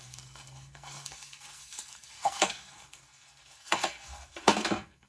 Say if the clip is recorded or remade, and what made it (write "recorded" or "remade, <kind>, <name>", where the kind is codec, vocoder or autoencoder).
remade, codec, SNAC